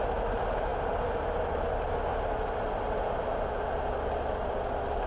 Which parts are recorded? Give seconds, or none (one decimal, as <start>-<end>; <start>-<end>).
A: 0.0-5.1